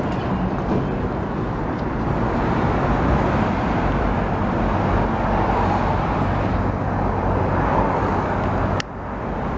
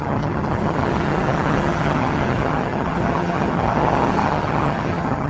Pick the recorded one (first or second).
first